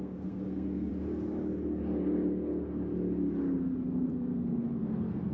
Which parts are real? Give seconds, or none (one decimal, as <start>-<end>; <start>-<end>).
0.9-4.1